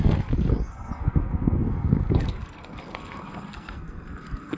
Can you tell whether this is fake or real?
fake